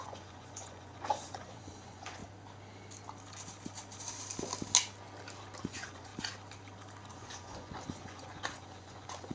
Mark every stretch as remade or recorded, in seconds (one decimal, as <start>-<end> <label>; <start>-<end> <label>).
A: 0.0-2.2 remade; 2.2-5.6 recorded; 5.6-6.1 remade; 6.1-7.1 recorded; 7.1-9.3 remade